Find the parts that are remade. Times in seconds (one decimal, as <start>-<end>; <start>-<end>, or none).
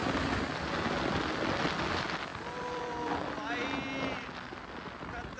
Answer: none